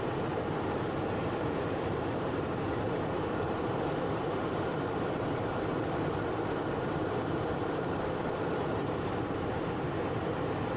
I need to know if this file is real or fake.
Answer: fake